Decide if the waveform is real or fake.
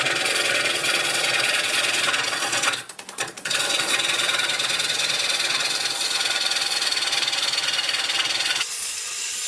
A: fake